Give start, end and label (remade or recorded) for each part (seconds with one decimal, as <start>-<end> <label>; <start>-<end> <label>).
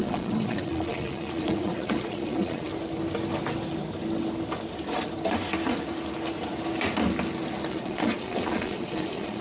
0.0-2.7 remade; 2.7-7.7 recorded; 7.7-9.4 remade